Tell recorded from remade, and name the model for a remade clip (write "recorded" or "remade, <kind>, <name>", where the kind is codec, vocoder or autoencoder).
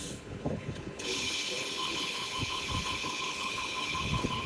remade, codec, HILCodec